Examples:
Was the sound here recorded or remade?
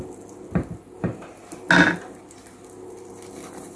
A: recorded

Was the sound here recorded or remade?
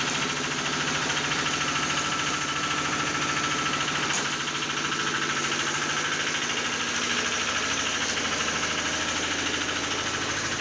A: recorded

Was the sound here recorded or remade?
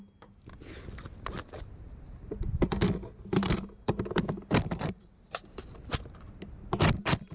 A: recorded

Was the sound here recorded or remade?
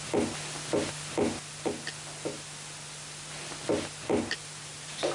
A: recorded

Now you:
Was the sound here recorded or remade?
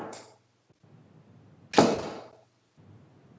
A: recorded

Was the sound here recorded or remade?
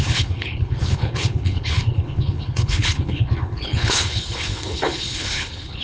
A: remade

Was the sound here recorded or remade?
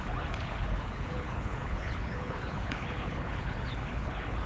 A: remade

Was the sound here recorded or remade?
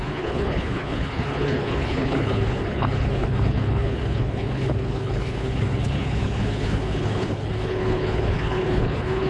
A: remade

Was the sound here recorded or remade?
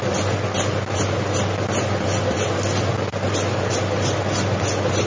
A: recorded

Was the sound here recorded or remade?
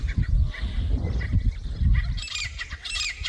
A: recorded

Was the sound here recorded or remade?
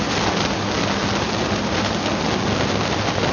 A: recorded